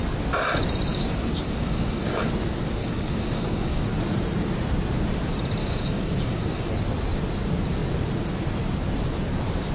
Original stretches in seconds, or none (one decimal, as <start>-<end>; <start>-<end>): 0.0-0.9; 2.3-2.8; 3.8-5.6; 6.7-9.7